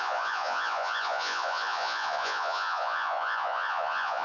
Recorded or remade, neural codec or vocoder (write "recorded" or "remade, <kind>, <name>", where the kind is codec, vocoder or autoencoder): remade, vocoder, Vocos